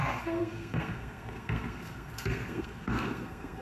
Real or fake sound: fake